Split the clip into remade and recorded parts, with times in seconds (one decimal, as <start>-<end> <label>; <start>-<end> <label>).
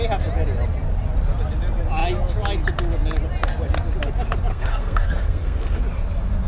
0.0-4.5 recorded; 4.5-5.8 remade; 5.8-6.5 recorded